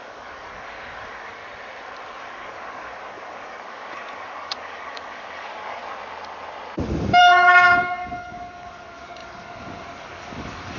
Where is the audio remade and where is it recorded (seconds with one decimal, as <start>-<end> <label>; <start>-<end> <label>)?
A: 0.0-1.4 remade; 1.4-2.1 recorded; 2.1-5.8 remade; 5.8-7.2 recorded; 7.2-10.8 remade